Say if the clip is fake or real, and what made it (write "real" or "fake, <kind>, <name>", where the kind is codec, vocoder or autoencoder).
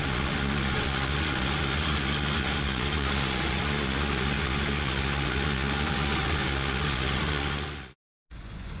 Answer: fake, vocoder, Vocos